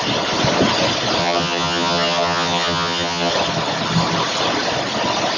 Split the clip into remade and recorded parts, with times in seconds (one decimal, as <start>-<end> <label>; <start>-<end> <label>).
0.0-1.2 recorded; 1.2-3.3 remade; 3.3-5.4 recorded